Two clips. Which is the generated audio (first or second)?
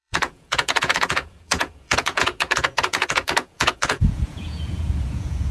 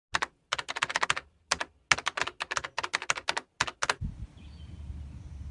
first